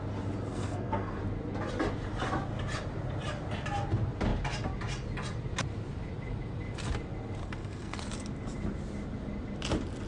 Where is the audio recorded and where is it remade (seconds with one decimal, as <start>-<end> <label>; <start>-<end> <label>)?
0.0-0.5 recorded; 0.5-1.2 remade; 1.2-7.4 recorded; 7.4-8.0 remade; 8.0-10.1 recorded